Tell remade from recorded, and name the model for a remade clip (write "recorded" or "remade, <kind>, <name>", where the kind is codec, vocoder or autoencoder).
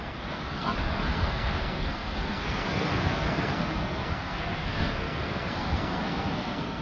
remade, codec, SNAC